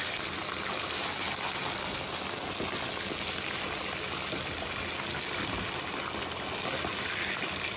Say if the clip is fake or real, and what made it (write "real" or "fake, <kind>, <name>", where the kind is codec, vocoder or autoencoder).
real